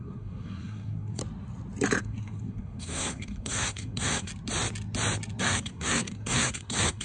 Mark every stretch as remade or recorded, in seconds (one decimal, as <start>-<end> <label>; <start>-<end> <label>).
0.0-1.2 remade; 1.2-2.0 recorded; 2.0-4.3 remade; 4.3-5.4 recorded; 5.4-7.0 remade